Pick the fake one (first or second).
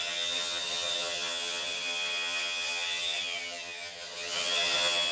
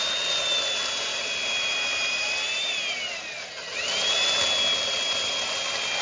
first